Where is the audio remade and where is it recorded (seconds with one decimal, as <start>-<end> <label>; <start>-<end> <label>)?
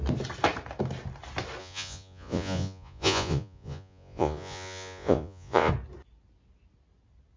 0.0-1.6 recorded; 1.6-5.7 remade; 5.7-7.4 recorded